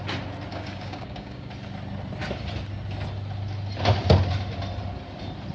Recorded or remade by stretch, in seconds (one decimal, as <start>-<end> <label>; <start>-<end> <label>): 0.0-0.5 recorded; 0.5-1.5 remade; 1.5-5.5 recorded